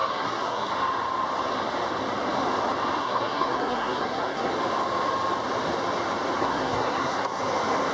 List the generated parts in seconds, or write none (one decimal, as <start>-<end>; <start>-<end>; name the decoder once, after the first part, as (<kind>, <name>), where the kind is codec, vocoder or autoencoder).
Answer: 0.0-0.7 (codec, SNAC); 3.0-4.5; 6.4-7.4